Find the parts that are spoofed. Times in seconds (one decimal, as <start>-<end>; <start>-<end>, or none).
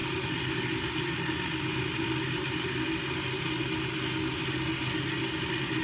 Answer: none